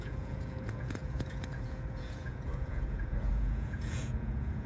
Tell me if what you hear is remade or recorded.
remade